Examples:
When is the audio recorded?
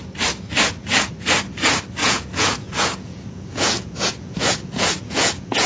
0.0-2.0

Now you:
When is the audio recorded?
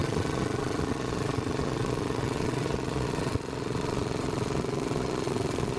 none